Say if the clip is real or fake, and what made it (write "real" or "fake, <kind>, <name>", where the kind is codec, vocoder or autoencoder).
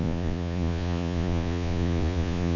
fake, vocoder, Vocos